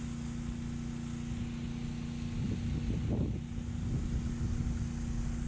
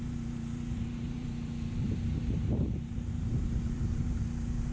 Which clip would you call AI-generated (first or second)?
second